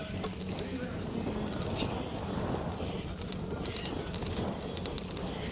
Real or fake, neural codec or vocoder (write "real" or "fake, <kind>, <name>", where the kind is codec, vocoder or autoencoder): real